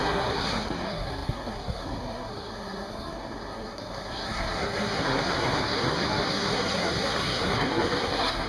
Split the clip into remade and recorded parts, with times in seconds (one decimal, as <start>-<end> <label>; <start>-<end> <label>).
0.0-8.5 remade